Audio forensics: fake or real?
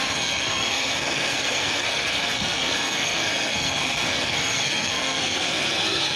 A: fake